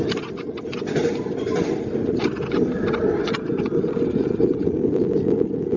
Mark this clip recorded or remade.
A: recorded